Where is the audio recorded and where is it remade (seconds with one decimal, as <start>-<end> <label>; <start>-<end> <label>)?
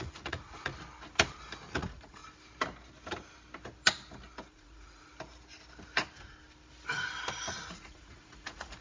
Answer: 0.0-0.7 remade; 0.7-1.7 recorded; 1.7-2.2 remade; 2.2-4.5 recorded; 4.5-5.1 remade; 5.1-7.7 recorded; 7.7-8.8 remade